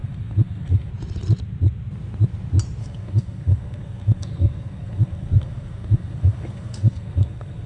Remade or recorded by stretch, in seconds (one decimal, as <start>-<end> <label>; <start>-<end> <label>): 0.0-0.9 remade; 0.9-2.8 recorded; 2.8-7.7 remade